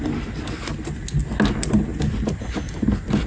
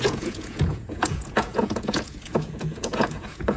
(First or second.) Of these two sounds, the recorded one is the first